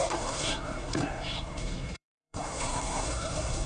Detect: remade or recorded remade